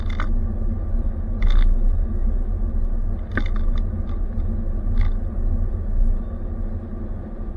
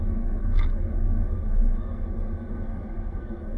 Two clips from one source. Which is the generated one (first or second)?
second